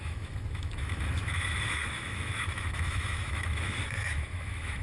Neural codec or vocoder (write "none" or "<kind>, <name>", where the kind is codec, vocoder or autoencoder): autoencoder, DAC-VAE